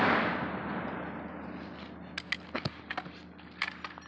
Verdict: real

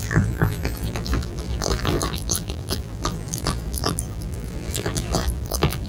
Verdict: fake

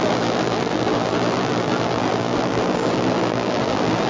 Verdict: fake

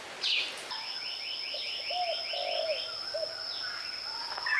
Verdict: real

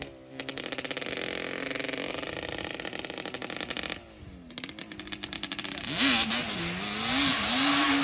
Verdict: real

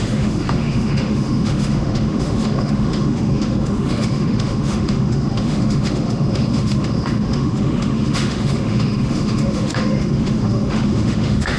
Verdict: fake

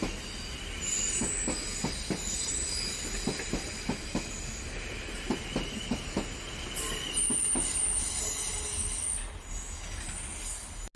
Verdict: real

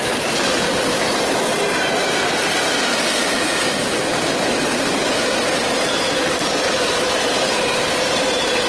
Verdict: real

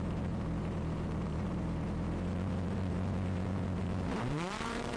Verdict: fake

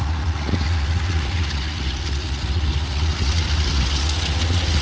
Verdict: fake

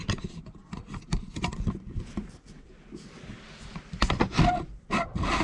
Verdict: fake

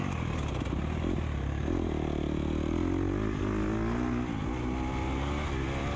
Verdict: real